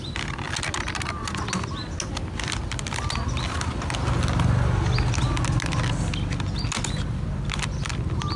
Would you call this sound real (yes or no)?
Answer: yes